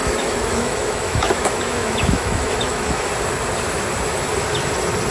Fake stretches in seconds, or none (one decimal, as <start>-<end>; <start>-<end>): 0.0-3.1